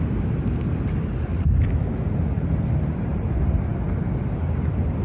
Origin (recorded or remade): recorded